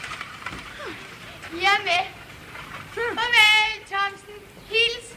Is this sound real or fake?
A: fake